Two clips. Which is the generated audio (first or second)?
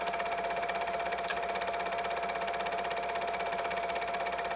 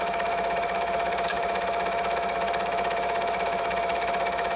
second